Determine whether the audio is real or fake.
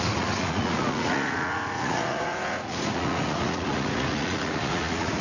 fake